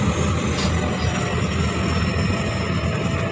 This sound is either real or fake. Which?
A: real